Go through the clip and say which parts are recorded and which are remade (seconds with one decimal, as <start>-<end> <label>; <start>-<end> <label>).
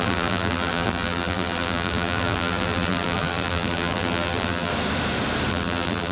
0.0-4.7 remade; 4.7-5.5 recorded; 5.5-6.1 remade